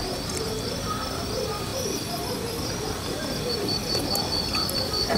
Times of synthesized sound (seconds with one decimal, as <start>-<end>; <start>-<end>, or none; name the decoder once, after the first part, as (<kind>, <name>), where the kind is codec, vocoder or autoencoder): none